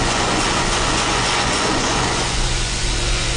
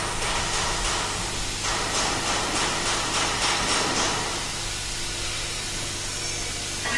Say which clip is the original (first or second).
second